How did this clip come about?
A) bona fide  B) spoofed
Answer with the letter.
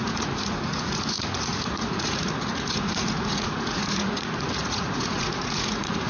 B